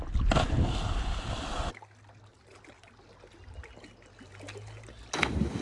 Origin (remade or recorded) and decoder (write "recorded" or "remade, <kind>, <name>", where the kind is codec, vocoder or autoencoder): recorded